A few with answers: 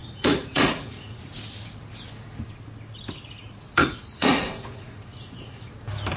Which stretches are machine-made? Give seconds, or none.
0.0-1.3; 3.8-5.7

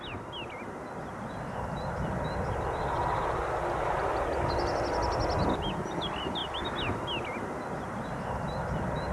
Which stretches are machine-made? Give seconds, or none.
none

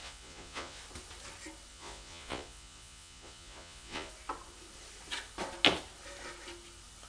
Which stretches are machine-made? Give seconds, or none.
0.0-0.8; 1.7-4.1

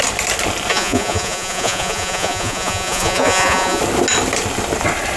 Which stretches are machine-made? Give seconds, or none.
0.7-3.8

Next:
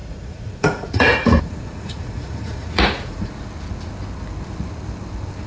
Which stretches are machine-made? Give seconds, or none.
0.0-3.3

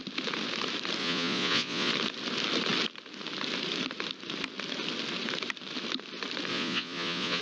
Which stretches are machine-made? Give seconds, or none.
1.0-1.9; 6.5-7.4

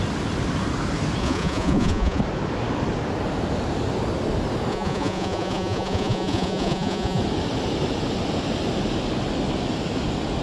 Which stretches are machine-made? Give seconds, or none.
1.2-2.2; 4.7-7.2

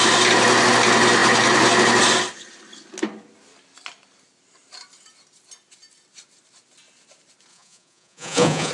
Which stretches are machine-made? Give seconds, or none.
7.5-8.7